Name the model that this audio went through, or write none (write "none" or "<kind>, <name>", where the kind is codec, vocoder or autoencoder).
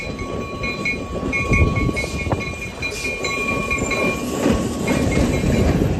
vocoder, BigVGAN v2